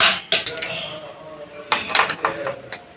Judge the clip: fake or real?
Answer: real